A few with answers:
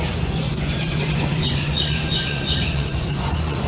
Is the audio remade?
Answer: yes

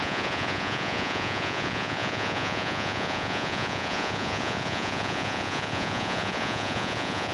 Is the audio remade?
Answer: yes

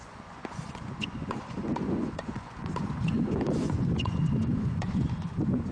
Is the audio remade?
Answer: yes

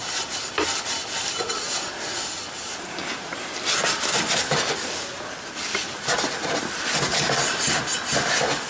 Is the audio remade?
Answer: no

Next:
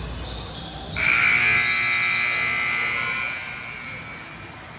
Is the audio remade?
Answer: no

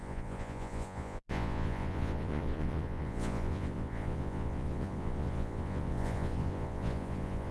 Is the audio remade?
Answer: yes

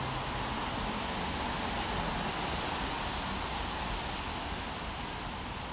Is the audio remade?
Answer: no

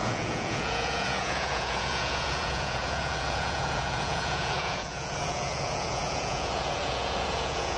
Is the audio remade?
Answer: yes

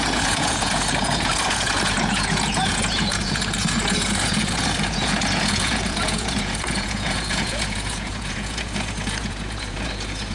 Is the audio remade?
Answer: yes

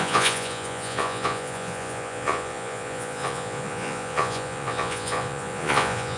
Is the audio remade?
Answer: yes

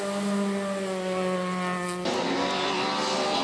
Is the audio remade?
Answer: no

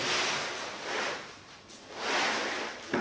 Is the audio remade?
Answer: no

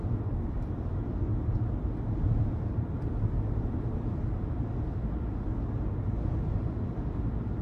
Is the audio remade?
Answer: no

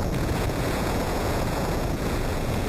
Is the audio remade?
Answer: yes